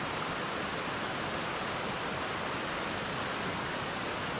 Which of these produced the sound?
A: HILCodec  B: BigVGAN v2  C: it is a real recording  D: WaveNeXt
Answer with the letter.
C